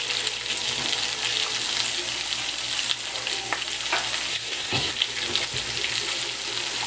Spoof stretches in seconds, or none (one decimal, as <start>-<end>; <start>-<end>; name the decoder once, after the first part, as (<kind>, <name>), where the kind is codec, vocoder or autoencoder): 4.3-4.9 (codec, SNAC)